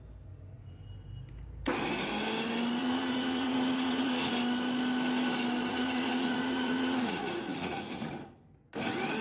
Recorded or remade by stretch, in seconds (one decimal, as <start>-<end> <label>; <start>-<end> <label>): 0.0-2.8 recorded; 2.8-4.3 remade; 4.3-5.7 recorded; 5.7-8.1 remade; 8.1-9.2 recorded